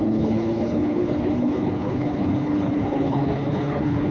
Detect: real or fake fake